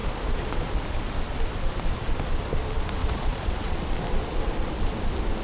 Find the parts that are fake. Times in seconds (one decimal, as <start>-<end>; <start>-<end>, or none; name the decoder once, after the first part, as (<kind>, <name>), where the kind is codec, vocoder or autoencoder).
0.0-0.8 (vocoder, Vocos); 3.0-3.8